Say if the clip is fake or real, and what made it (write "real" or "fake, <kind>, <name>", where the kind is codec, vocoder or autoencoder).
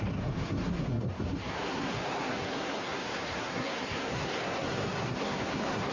fake, codec, SNAC